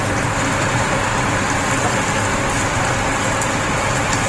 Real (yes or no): yes